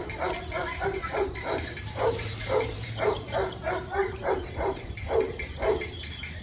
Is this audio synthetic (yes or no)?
yes